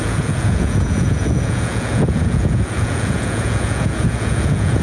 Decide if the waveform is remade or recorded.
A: remade